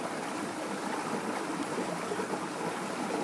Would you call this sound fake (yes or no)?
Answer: no